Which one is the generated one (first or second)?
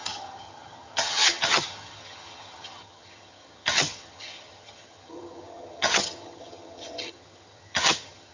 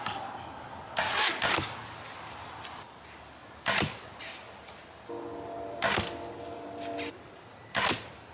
first